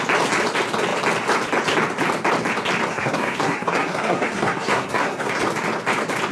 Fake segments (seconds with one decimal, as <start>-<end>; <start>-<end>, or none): 2.9-5.4